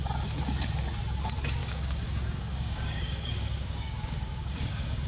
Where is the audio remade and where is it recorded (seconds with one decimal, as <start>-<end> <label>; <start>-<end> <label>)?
0.0-1.6 recorded; 1.6-5.1 remade